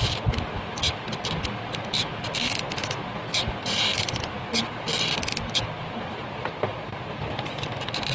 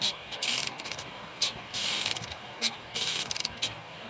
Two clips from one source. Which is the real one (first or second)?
first